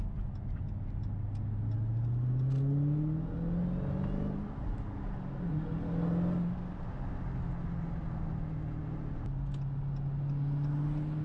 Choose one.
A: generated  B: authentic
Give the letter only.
B